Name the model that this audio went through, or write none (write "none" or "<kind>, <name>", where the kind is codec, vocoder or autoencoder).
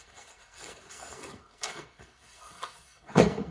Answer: codec, SNAC